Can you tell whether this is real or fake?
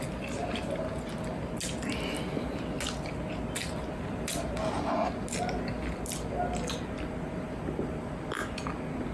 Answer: real